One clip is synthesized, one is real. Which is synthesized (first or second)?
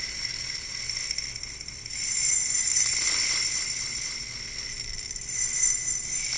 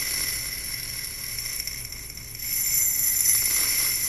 first